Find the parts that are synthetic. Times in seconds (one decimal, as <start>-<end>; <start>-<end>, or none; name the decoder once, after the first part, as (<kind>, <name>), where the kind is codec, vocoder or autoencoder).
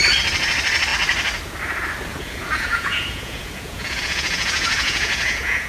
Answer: 2.1-5.7 (vocoder, Vocos)